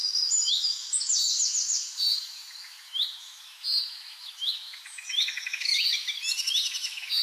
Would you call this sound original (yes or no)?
no